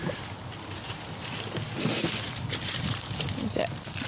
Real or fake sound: real